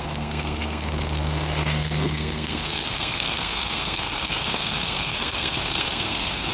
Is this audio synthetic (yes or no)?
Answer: yes